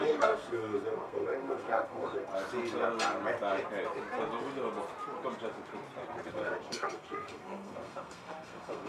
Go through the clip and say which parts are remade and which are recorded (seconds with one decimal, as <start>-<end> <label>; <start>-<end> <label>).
0.0-2.3 remade; 2.3-6.3 recorded; 6.3-8.9 remade